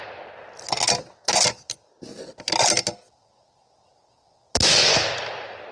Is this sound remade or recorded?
recorded